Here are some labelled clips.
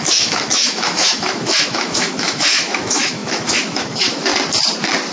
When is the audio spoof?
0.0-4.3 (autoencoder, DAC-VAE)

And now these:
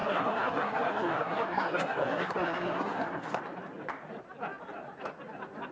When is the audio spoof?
0.0-3.4 (codec, SNAC)